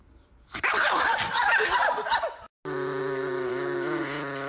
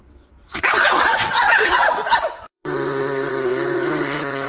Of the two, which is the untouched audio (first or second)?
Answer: first